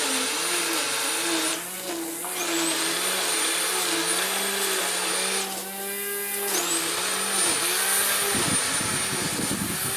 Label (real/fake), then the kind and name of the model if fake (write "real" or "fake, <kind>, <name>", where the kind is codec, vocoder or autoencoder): real